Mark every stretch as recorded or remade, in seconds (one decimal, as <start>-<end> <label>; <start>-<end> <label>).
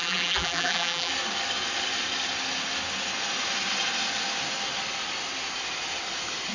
0.0-1.1 remade; 1.1-6.5 recorded